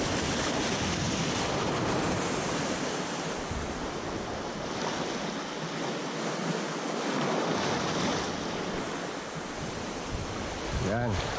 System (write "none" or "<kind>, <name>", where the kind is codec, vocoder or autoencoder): none